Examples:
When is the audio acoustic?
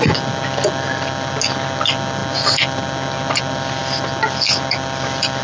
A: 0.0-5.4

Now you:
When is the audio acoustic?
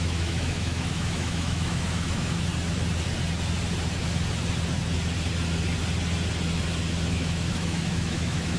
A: 2.5-7.1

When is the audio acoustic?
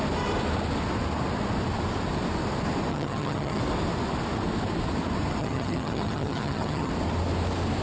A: 0.0-2.9; 3.6-5.4; 6.9-7.8